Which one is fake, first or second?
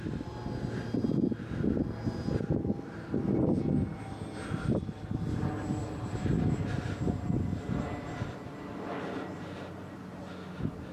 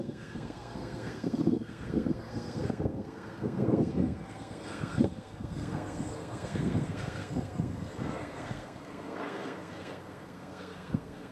second